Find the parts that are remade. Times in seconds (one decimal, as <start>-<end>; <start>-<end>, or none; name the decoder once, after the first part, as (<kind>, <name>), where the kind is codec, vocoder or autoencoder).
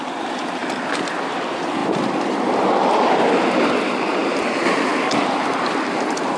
1.8-2.5 (vocoder, BigVGAN v2); 4.2-6.4